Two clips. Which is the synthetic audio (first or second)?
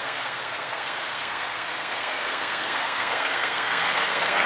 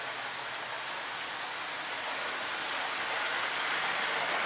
first